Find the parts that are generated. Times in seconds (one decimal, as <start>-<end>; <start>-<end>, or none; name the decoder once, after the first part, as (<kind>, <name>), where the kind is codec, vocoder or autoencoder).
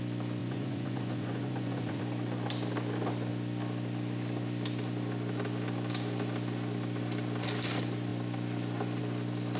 0.4-2.0 (vocoder, Vocos)